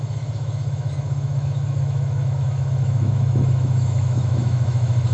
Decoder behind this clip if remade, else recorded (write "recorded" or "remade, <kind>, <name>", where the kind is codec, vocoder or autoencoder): remade, autoencoder, DAC-VAE